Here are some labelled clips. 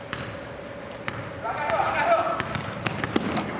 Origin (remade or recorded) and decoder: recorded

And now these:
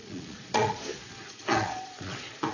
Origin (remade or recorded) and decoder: remade, vocoder, Vocos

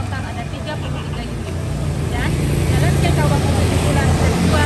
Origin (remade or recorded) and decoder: recorded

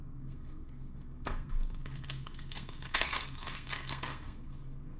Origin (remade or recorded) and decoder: remade, codec, SNAC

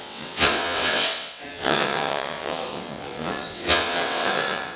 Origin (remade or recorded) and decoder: remade, vocoder, WaveNeXt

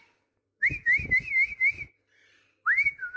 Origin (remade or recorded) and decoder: recorded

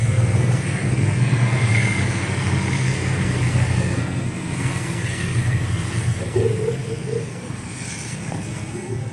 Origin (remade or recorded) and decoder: remade, codec, SNAC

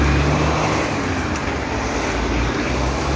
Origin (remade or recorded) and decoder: recorded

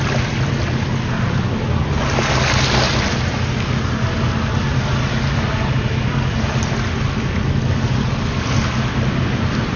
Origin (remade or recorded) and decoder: recorded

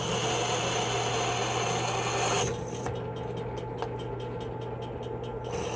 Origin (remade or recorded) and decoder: recorded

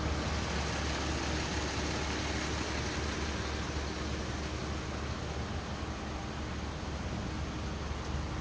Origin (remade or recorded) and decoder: recorded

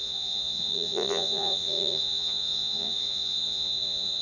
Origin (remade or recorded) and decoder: remade, vocoder, Vocos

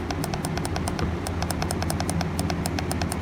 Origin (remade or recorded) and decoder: recorded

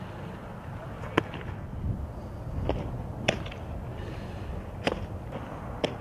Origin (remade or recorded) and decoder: recorded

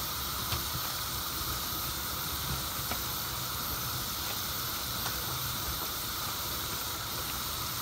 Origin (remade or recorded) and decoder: remade, vocoder, BigVGAN v2